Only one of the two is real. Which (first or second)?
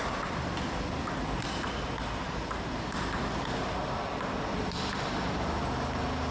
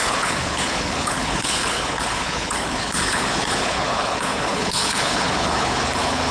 first